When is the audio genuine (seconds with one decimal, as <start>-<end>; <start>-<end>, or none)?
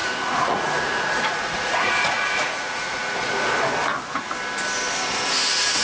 3.5-5.8